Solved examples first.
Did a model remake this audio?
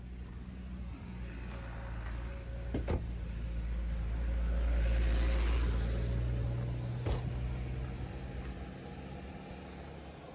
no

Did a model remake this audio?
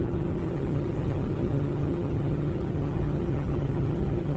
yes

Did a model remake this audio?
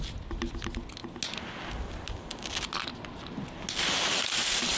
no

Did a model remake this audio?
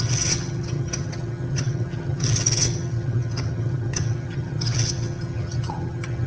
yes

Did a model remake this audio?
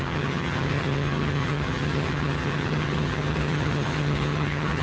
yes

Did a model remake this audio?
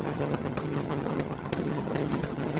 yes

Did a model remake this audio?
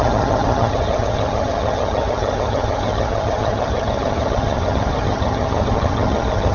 yes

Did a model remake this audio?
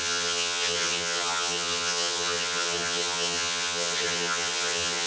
yes